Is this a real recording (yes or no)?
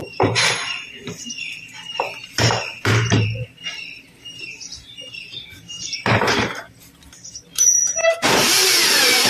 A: no